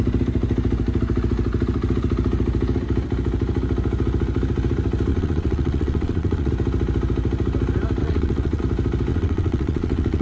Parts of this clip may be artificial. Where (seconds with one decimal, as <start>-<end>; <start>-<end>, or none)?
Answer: 5.1-6.5; 8.0-8.6; 9.1-10.2